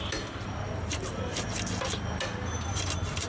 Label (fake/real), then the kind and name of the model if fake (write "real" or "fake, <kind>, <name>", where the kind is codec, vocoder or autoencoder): real